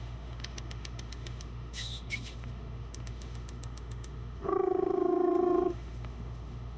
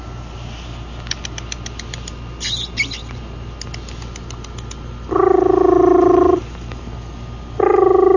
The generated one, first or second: first